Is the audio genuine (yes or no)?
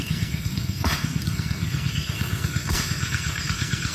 no